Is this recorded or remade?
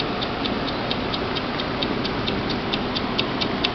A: recorded